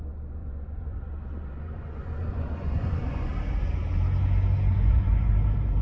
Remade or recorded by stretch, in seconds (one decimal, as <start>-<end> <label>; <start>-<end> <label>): 0.0-0.4 recorded; 0.4-1.0 remade; 1.0-1.5 recorded; 1.5-3.3 remade; 3.3-4.7 recorded; 4.7-5.3 remade; 5.3-5.8 recorded